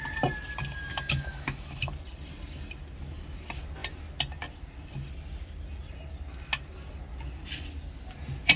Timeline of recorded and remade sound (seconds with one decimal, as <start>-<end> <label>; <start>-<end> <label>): 0.0-0.9 recorded; 0.9-1.9 remade; 1.9-8.6 recorded